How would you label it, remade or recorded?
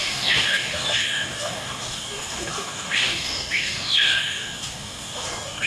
remade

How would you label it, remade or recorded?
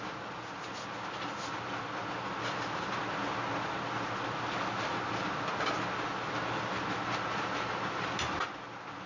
recorded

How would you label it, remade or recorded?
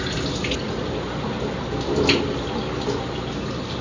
recorded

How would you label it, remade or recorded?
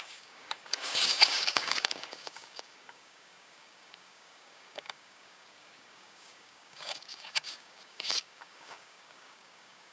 remade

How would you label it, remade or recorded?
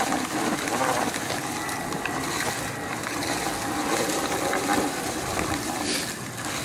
recorded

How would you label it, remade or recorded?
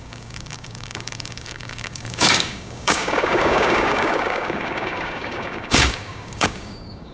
remade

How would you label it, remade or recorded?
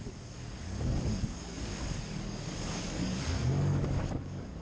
remade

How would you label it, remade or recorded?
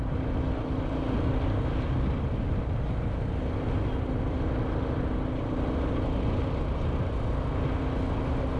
recorded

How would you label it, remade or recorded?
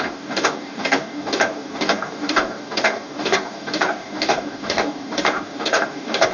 remade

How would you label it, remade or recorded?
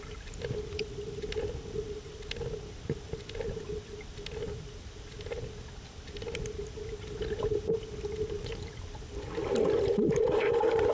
recorded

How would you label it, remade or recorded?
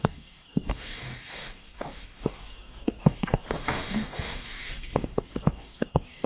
remade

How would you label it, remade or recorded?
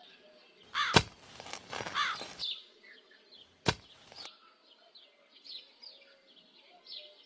recorded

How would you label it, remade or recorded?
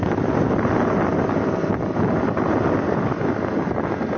recorded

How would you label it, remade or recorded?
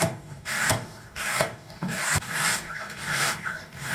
remade